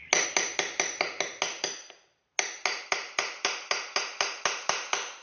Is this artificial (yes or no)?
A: no